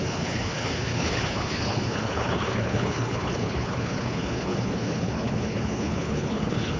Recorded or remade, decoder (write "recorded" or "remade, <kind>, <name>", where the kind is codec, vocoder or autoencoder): remade, codec, HILCodec